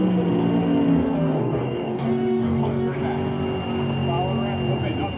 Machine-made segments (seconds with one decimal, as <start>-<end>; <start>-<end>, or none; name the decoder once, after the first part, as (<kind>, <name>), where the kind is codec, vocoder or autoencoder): 0.9-3.0 (codec, DAC)

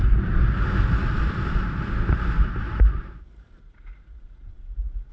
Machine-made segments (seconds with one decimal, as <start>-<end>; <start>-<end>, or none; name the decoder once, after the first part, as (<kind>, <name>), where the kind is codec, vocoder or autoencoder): 3.6-5.1 (vocoder, Vocos)

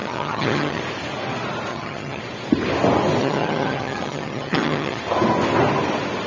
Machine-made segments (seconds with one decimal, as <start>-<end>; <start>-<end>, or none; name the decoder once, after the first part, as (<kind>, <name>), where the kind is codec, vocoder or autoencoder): 0.0-0.8 (vocoder, HiFi-GAN); 1.7-2.2; 3.2-5.0

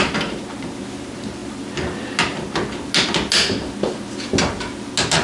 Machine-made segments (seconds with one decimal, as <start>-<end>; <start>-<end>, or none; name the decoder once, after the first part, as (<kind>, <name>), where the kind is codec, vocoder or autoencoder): none

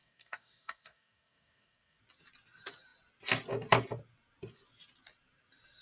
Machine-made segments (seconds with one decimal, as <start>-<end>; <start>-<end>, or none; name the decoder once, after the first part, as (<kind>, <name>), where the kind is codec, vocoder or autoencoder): 0.0-2.0 (codec, DAC)

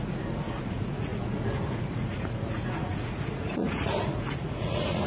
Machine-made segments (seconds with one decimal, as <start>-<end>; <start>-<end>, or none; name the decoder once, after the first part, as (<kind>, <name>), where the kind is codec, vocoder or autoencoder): 0.0-5.1 (vocoder, Vocos)

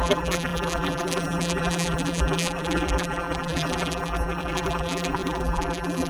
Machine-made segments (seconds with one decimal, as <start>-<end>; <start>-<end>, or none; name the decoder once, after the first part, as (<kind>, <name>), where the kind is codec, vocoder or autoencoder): 0.0-6.1 (vocoder, BigVGAN v2)

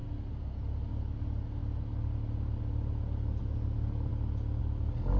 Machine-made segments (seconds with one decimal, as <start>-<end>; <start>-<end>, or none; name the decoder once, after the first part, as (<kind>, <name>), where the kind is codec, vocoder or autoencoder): none